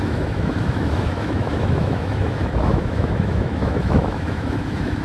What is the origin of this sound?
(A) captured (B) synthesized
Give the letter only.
B